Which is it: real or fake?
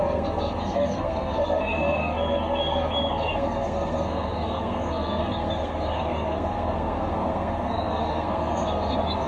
fake